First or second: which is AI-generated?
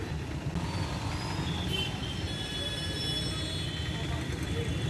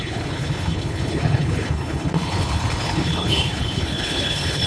second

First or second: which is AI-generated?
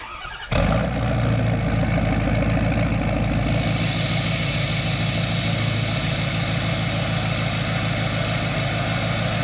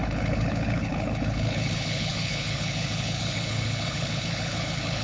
second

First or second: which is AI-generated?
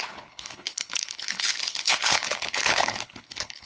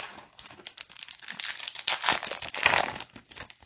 first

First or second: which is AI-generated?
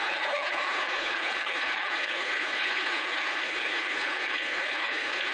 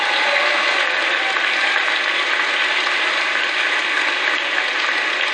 first